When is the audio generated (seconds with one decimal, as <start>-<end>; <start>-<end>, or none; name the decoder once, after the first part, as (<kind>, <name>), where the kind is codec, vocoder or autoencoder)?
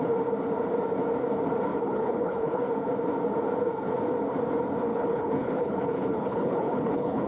1.7-2.6 (codec, HILCodec); 4.9-7.3